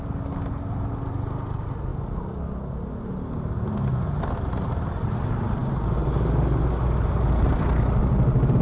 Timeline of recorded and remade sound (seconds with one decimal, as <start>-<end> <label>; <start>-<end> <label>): 0.0-8.6 recorded